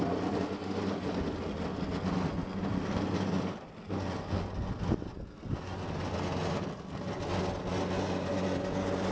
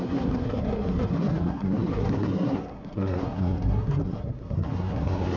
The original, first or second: first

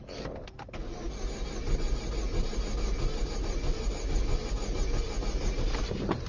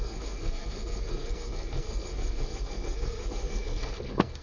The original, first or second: first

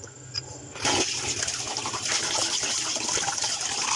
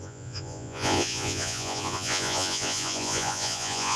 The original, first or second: first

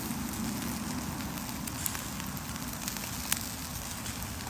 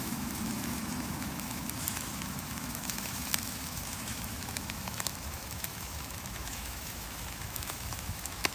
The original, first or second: first